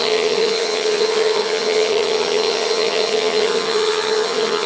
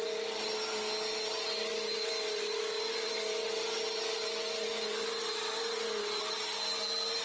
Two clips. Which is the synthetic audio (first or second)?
first